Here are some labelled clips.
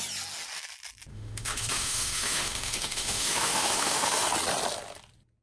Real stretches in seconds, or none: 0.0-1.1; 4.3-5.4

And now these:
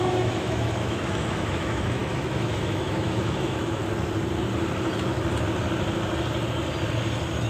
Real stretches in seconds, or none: 3.8-7.5